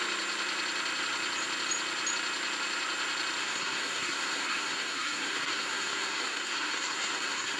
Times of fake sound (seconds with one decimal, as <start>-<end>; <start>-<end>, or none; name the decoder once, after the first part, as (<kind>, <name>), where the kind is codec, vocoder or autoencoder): 3.4-7.6 (codec, SNAC)